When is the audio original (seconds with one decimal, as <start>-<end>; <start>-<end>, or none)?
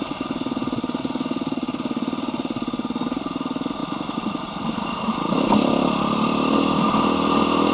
0.0-7.7